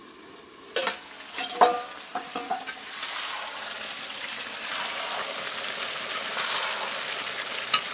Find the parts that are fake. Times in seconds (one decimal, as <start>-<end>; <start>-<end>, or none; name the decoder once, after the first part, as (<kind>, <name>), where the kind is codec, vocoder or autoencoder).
2.1-2.6 (vocoder, Vocos)